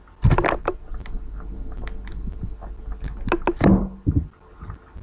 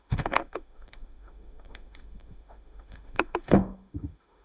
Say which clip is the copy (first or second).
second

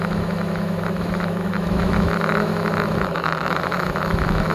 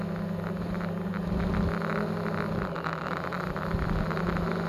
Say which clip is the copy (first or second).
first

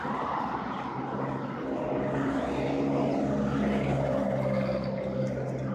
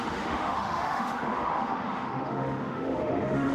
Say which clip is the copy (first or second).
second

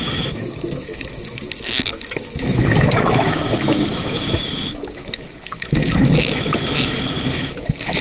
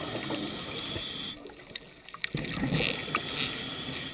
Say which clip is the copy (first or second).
first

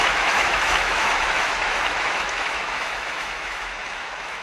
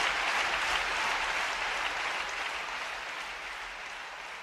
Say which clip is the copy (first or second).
first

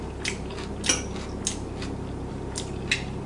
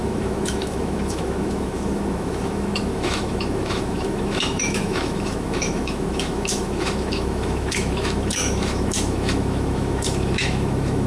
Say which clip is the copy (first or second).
second